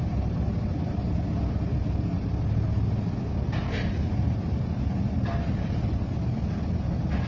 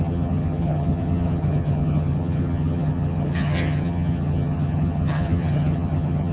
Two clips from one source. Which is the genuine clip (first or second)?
first